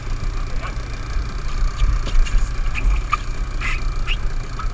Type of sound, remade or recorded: recorded